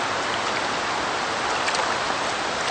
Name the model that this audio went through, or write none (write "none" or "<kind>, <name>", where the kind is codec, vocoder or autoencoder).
none